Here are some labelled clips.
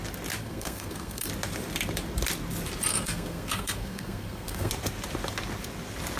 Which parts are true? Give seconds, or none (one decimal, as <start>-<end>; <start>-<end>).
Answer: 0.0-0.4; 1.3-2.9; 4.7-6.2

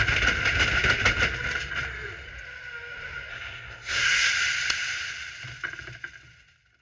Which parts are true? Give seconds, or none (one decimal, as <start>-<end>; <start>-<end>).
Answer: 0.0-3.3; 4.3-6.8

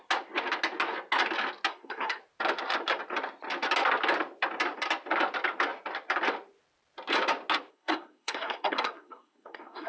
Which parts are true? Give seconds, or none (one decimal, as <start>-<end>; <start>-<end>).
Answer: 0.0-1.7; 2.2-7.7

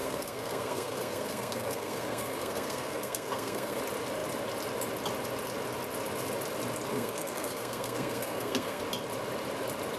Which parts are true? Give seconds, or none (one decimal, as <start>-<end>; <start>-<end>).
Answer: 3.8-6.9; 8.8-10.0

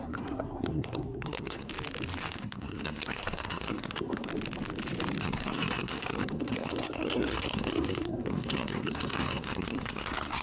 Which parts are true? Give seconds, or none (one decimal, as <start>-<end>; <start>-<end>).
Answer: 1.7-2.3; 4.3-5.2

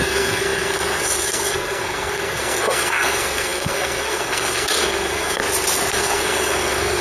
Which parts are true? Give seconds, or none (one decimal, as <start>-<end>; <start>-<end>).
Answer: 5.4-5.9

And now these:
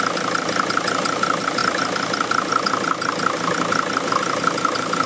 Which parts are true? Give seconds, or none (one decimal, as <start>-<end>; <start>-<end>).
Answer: 0.0-5.1

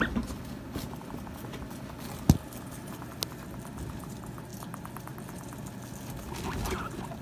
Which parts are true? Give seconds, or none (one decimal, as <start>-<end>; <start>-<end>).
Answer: 0.0-7.2